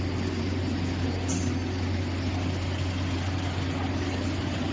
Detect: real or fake real